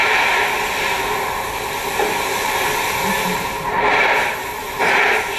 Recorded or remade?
remade